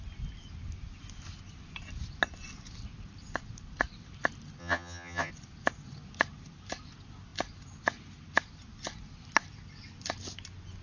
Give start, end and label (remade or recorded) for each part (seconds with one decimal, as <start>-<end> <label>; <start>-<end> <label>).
0.0-4.6 recorded; 4.6-5.3 remade; 5.3-10.8 recorded